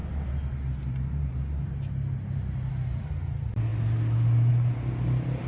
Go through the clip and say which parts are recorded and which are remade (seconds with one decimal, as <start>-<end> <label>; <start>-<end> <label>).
0.0-5.5 recorded